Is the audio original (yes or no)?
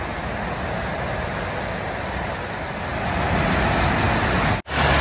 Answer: yes